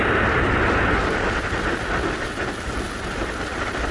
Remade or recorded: recorded